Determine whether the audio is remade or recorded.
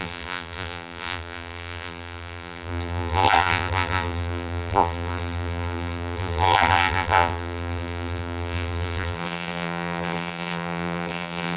remade